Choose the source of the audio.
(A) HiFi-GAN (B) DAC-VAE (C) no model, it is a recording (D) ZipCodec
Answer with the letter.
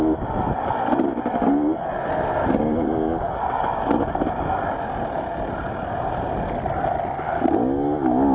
C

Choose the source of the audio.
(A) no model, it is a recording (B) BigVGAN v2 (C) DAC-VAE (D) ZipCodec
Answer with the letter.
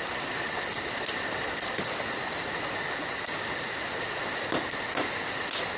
A